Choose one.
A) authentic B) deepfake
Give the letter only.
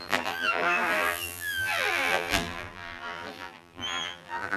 B